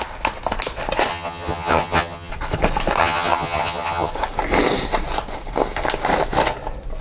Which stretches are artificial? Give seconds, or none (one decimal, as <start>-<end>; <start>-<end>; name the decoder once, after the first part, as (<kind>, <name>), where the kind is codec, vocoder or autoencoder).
1.1-2.3 (vocoder, HiFi-GAN); 3.0-4.1